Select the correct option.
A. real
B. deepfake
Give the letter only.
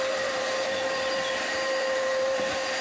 B